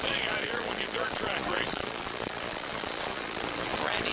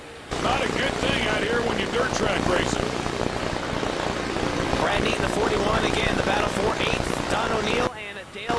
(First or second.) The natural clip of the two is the second